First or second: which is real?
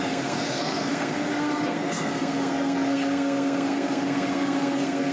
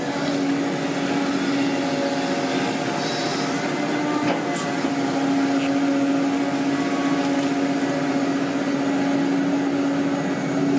second